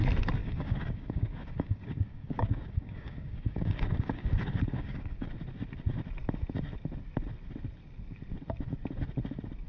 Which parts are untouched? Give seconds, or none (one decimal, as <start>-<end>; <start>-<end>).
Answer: 0.0-0.4; 5.3-9.7